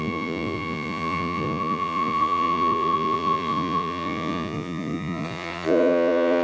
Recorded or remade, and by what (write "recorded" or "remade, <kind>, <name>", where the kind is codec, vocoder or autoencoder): remade, vocoder, Vocos